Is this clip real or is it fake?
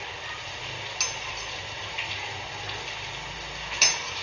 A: real